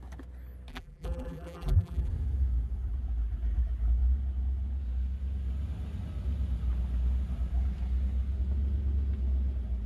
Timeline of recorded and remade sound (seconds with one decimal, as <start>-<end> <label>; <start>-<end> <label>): 0.0-0.7 recorded; 0.7-2.1 remade; 2.1-9.9 recorded